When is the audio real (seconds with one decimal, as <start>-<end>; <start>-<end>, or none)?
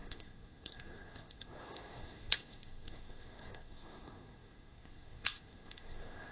none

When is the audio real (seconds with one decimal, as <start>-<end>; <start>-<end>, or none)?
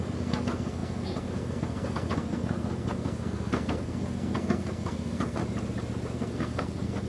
5.4-6.1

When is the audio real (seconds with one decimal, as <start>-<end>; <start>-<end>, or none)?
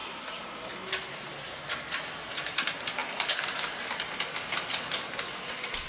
0.0-5.9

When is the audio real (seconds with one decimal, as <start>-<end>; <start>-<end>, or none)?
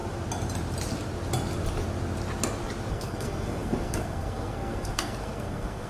0.0-2.9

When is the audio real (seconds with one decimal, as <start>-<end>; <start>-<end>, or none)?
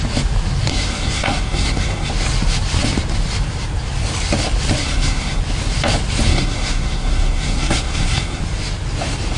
0.0-0.7; 2.1-4.8; 5.4-6.3; 8.4-9.4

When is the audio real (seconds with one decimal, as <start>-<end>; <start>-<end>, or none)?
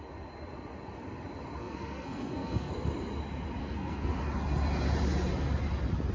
0.0-1.6; 2.7-3.6; 4.2-6.1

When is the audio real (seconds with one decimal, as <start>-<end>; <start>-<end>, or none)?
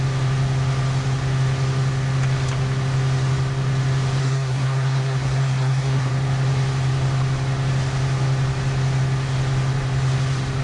0.0-4.2; 6.1-10.6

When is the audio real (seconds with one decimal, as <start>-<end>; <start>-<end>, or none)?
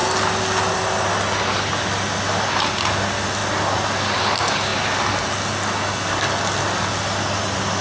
0.0-7.8